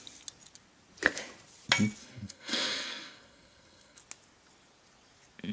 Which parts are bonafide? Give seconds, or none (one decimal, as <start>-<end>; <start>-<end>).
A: 0.0-2.0; 4.0-5.5